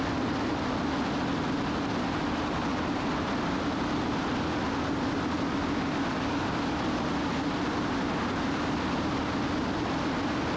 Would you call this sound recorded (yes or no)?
yes